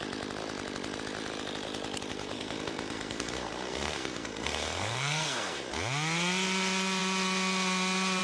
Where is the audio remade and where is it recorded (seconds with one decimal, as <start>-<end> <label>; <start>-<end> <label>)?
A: 0.0-2.1 recorded; 2.1-5.7 remade; 5.7-8.2 recorded